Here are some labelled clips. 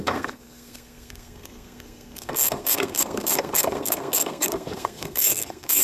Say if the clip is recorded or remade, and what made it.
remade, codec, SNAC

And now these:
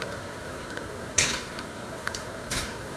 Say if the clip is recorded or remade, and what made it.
remade, codec, SNAC